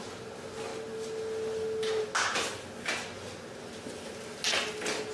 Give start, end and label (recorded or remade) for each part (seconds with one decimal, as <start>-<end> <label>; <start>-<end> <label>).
0.0-5.1 recorded